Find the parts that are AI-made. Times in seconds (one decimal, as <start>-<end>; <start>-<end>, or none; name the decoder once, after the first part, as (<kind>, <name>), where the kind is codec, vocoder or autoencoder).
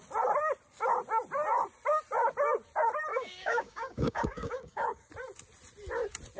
3.1-5.1 (codec, DAC)